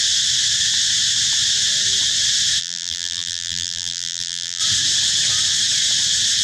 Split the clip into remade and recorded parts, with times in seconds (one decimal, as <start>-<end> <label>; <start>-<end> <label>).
0.0-2.6 recorded; 2.6-4.6 remade; 4.6-6.4 recorded